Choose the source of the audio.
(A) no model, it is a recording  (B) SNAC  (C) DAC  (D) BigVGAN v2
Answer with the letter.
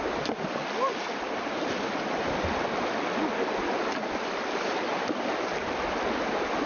A